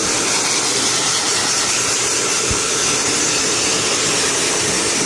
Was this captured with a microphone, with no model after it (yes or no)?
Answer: yes